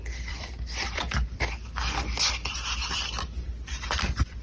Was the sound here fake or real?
fake